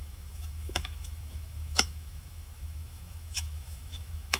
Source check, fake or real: fake